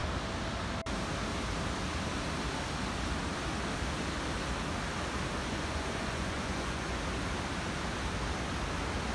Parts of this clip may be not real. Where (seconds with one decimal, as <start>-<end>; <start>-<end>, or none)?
5.4-7.0